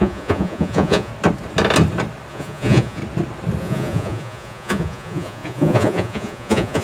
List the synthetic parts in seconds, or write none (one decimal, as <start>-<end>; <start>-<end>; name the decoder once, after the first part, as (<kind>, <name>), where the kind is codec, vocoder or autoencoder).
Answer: 0.0-1.1 (vocoder, Vocos); 2.3-3.0; 3.6-6.8